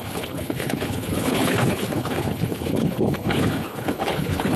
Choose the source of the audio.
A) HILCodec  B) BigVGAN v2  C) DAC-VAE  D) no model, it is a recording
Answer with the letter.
A